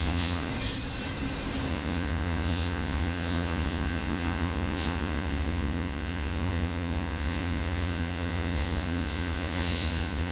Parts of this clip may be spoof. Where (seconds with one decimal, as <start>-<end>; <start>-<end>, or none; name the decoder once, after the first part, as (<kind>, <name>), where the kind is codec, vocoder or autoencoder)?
0.0-0.5 (vocoder, Vocos); 1.7-10.3